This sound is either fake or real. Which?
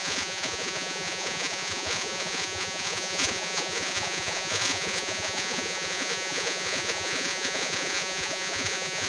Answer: fake